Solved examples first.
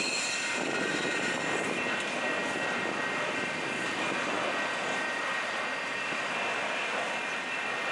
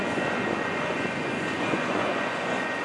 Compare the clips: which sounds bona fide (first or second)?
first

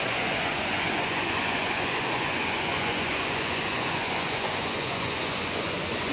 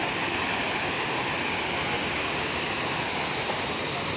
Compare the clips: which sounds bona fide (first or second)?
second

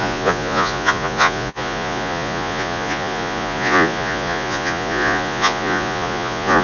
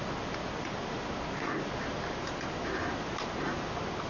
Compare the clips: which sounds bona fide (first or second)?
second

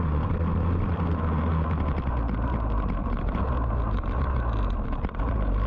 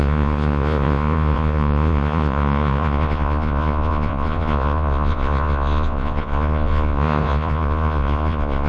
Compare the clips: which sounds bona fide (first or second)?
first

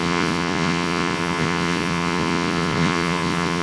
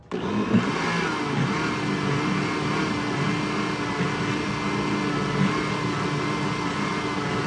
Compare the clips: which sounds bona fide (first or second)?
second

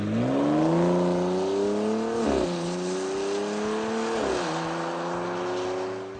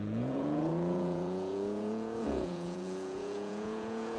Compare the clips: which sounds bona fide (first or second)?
first